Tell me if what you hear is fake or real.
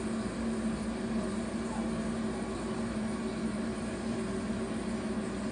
real